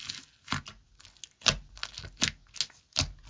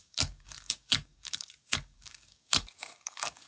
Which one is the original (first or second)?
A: first